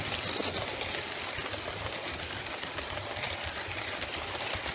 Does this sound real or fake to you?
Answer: real